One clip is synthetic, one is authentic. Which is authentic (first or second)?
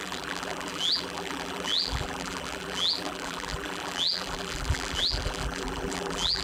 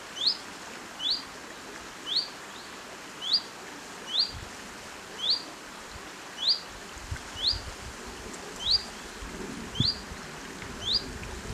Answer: second